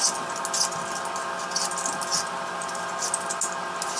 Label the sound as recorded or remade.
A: recorded